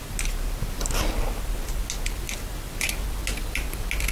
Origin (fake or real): real